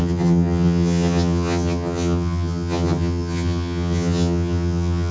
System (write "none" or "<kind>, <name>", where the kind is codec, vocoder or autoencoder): vocoder, HiFi-GAN